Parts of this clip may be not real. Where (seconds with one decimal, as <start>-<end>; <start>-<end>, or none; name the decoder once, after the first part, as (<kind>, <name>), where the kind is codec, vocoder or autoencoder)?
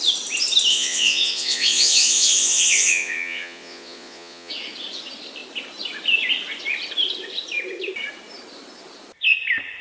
0.7-4.5 (vocoder, Vocos)